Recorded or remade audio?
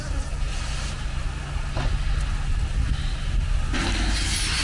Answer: recorded